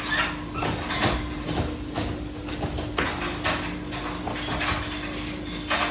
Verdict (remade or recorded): recorded